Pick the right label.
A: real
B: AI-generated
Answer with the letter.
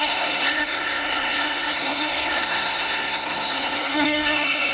B